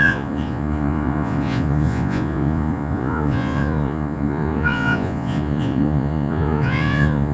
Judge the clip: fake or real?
fake